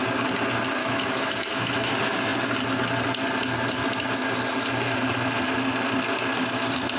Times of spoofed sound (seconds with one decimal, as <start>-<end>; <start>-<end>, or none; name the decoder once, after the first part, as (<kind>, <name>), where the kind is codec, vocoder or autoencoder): 0.8-1.9 (autoencoder, DAC-VAE)